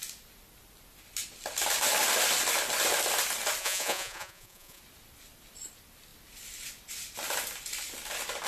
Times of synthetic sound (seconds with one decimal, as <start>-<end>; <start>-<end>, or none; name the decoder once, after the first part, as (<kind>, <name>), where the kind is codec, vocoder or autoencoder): 3.6-4.8 (vocoder, Vocos)